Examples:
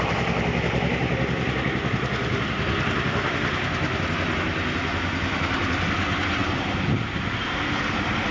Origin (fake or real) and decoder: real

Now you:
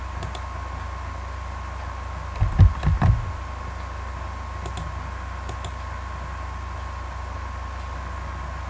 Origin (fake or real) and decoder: real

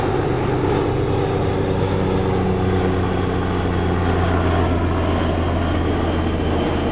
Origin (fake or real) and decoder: real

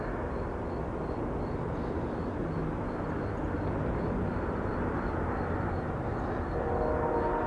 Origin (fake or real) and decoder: real